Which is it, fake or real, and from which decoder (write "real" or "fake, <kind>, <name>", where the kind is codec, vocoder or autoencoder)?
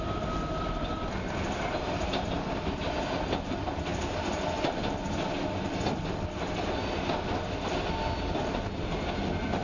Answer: real